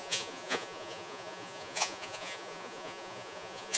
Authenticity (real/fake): fake